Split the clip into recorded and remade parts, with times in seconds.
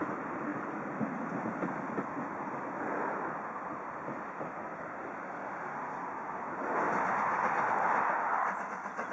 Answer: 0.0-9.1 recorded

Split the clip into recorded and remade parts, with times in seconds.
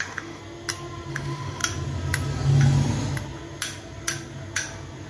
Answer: 0.0-0.4 remade; 0.4-1.1 recorded; 1.1-1.6 remade; 1.6-5.1 recorded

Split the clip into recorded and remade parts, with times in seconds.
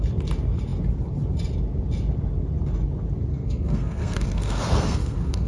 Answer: 0.0-3.3 recorded; 3.3-5.5 remade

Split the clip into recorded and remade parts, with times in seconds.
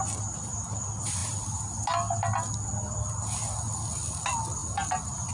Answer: 0.0-5.3 recorded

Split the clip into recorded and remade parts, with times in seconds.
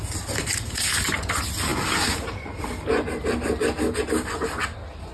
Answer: 0.0-5.1 recorded